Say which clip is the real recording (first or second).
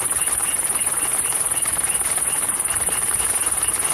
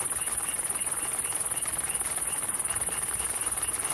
second